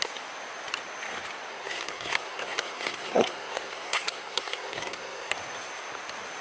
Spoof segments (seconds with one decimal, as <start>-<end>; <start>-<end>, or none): 1.5-5.3